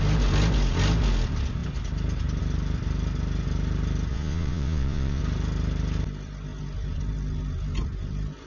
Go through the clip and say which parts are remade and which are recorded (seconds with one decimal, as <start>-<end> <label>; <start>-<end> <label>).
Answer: 0.0-4.1 recorded; 4.1-5.2 remade; 5.2-8.5 recorded